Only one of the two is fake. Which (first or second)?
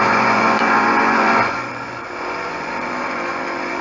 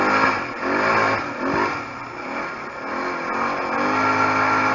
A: first